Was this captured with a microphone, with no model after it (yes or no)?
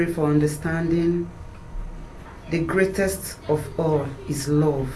yes